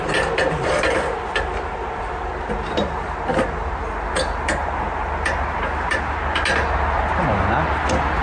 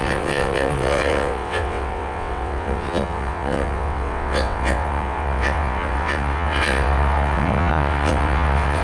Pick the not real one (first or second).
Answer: second